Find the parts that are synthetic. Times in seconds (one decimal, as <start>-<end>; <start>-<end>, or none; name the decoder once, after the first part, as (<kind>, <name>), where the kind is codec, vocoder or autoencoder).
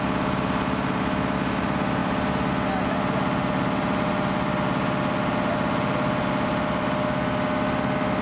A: none